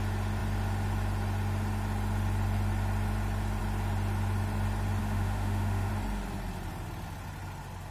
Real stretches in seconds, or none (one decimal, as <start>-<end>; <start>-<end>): 0.0-5.0; 5.9-7.9